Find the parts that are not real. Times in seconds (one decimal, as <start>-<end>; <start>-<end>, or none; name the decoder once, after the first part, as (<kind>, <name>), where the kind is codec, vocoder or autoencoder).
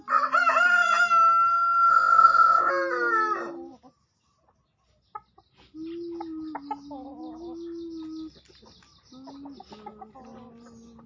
1.9-2.7 (codec, ZipCodec)